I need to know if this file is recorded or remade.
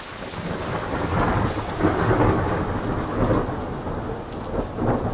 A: recorded